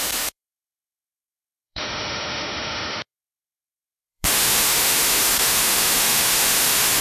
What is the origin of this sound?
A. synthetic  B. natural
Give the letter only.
A